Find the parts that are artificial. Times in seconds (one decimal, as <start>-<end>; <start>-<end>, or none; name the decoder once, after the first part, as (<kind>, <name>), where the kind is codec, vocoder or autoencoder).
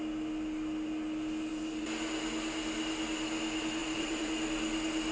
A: 3.8-4.3 (vocoder, BigVGAN v2)